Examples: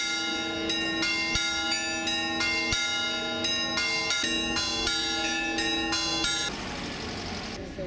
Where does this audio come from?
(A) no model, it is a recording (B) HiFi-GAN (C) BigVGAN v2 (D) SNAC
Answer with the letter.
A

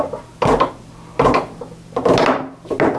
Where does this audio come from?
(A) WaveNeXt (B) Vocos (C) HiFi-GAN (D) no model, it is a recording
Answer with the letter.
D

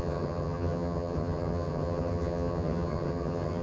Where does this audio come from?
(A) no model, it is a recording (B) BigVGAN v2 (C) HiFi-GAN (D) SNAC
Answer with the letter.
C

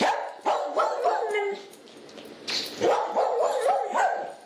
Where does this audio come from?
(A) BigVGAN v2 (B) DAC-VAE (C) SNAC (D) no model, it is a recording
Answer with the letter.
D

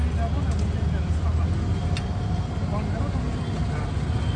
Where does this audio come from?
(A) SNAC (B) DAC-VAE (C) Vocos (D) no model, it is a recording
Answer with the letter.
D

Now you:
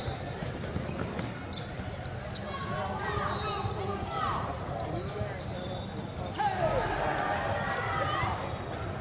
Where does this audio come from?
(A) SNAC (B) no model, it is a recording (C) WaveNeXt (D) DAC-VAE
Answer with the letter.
B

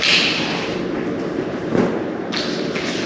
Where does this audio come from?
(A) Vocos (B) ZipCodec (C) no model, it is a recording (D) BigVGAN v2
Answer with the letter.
C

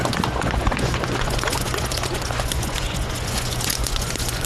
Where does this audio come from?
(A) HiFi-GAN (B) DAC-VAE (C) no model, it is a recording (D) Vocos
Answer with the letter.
D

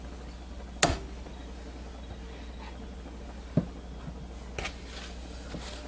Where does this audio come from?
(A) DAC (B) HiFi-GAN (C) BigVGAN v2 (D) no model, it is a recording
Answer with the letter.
D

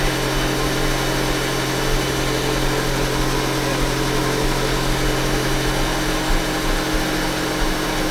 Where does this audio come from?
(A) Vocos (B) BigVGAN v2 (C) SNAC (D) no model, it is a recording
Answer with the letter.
D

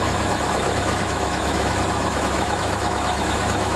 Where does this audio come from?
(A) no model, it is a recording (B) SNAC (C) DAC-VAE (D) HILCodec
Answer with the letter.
C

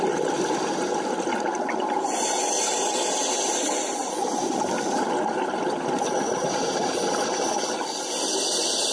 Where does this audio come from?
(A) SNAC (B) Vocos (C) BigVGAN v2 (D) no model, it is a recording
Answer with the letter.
D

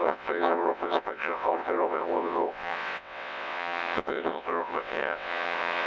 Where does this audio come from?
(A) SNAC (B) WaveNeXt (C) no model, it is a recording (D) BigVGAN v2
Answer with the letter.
B